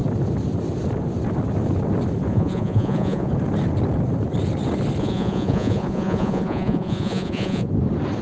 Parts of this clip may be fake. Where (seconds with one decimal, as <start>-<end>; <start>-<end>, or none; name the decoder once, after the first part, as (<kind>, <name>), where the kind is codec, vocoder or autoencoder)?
2.3-3.3 (vocoder, Vocos); 5.0-7.7